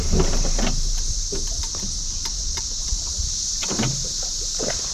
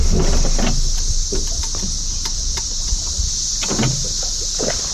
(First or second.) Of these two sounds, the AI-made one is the first